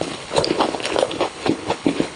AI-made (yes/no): yes